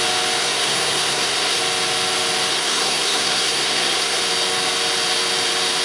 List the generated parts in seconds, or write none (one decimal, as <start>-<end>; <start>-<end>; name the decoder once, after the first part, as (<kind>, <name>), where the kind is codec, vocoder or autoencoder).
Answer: 0.4-1.6 (codec, SNAC); 2.5-4.2